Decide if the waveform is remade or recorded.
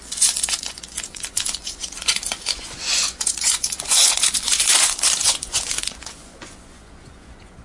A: remade